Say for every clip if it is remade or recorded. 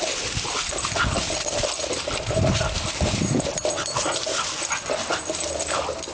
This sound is recorded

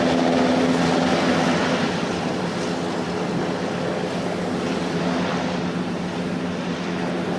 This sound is recorded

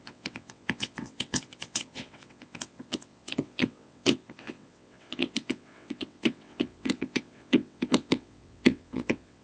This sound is remade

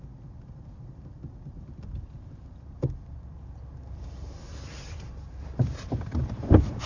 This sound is remade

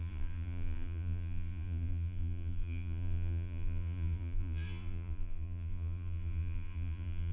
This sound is remade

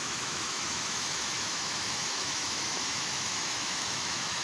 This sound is remade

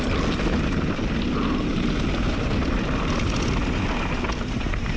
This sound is recorded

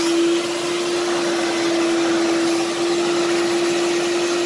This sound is recorded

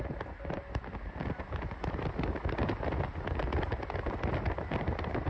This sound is recorded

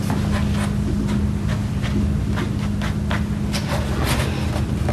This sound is recorded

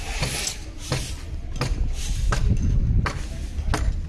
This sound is recorded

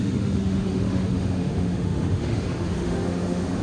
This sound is remade